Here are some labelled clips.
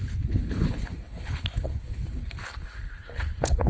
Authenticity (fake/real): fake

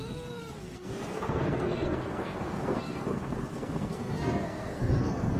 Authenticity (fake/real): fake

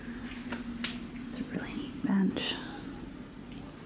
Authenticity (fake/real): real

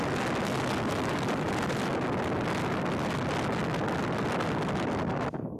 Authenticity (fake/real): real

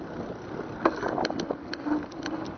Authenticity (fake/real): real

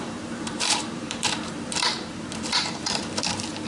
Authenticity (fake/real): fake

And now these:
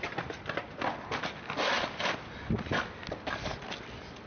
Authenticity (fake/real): real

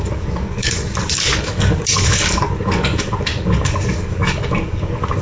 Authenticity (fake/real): fake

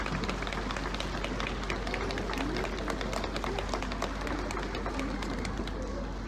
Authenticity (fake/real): real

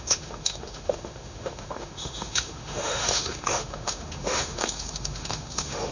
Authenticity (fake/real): fake